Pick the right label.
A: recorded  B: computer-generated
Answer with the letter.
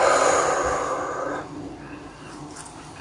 A